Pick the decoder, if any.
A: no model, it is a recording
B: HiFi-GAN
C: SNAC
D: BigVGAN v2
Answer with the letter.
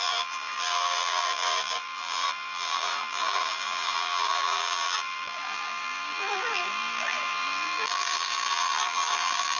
D